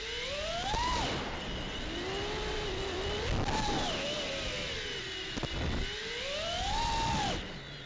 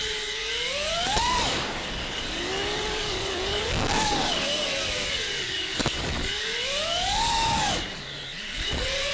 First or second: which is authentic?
first